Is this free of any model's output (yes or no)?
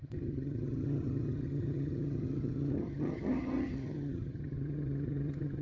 no